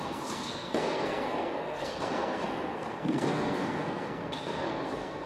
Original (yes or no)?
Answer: no